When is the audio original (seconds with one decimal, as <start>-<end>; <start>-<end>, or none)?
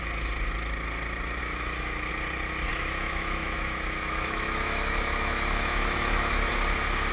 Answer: 0.0-1.4; 2.1-2.7; 6.5-7.1